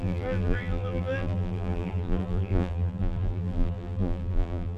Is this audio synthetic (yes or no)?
yes